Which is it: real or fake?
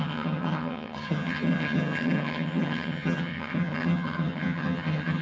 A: fake